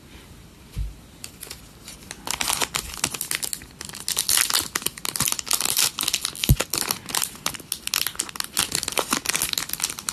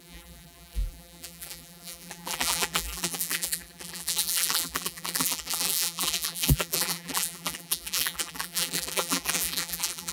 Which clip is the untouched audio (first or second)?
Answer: first